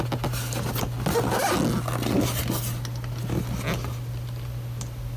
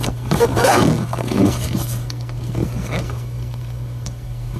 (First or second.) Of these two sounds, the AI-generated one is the second